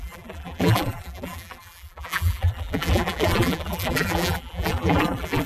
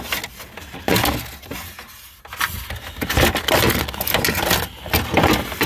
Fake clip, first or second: first